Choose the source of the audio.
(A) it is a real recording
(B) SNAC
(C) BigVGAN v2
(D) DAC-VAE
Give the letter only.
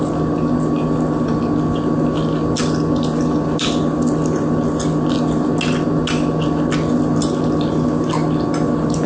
A